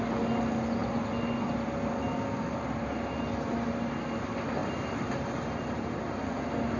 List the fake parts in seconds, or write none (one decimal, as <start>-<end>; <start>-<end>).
4.6-6.2